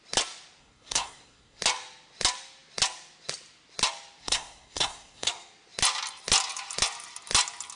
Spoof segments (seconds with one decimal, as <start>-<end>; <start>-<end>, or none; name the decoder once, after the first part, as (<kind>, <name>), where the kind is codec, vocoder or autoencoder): 0.6-1.6 (codec, SNAC); 4.2-5.3